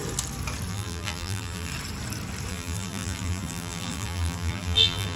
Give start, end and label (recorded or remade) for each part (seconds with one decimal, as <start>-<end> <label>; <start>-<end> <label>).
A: 0.0-0.7 recorded; 0.7-1.7 remade; 1.7-2.5 recorded; 2.5-5.2 remade